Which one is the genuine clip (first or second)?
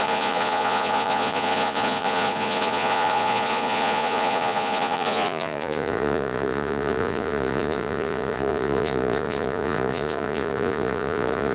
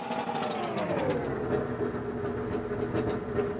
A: second